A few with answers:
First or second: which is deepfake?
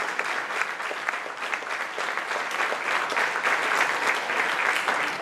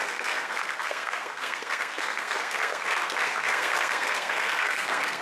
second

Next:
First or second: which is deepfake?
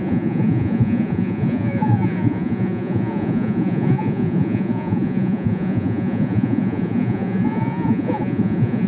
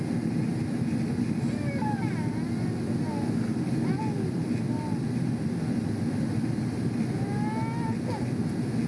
first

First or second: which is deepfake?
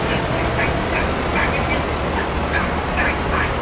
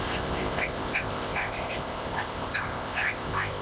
second